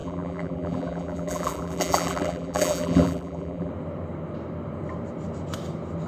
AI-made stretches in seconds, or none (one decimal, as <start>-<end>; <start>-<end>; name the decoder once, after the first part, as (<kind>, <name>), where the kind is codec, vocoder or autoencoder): 0.0-3.7 (vocoder, BigVGAN v2)